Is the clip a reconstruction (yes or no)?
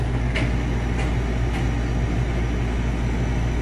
no